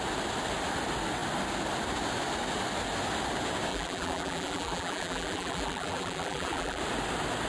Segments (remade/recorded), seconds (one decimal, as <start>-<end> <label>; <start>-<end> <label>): 0.0-3.7 recorded; 3.7-6.8 remade; 6.8-7.5 recorded